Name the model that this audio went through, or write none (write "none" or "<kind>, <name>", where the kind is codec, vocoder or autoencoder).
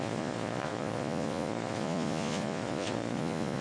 vocoder, Vocos